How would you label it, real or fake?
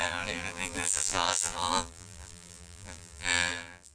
fake